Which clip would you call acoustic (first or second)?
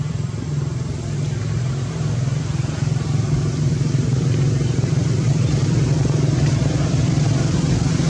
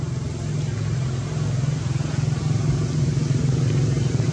second